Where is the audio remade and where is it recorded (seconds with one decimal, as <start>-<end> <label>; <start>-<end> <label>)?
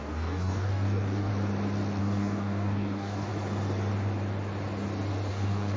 0.0-1.3 remade; 1.3-2.0 recorded; 2.0-3.3 remade; 3.3-5.3 recorded; 5.3-5.8 remade